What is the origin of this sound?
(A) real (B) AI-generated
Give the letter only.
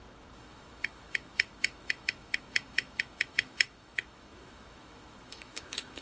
B